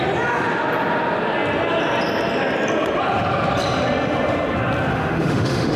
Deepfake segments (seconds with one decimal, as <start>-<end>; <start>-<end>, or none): 4.9-5.8